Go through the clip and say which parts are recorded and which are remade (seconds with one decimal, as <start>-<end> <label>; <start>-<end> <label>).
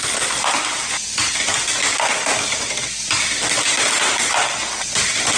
0.0-5.4 recorded